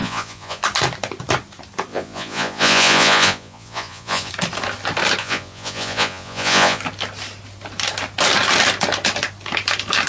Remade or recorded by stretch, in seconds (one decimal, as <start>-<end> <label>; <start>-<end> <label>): 0.0-0.6 remade; 0.6-1.9 recorded; 1.9-4.3 remade; 4.3-5.2 recorded; 5.2-6.8 remade; 6.8-10.1 recorded